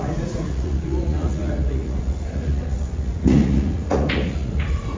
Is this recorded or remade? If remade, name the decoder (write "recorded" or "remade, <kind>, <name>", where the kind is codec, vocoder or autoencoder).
remade, vocoder, Vocos